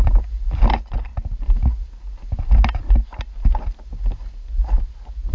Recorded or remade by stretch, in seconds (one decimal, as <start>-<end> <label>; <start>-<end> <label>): 0.0-5.3 recorded